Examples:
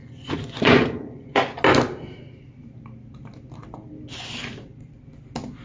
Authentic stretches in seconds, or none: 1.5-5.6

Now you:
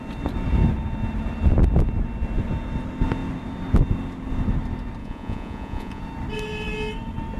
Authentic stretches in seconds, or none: 0.0-5.0; 6.0-7.4

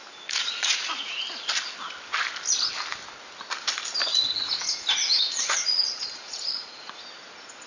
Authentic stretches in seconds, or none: 1.1-4.1; 7.0-7.7

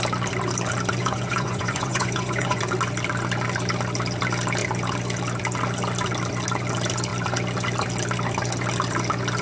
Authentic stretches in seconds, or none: 0.0-1.0; 2.6-9.4